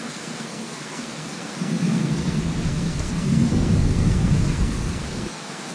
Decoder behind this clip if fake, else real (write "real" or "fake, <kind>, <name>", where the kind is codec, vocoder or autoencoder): fake, codec, SNAC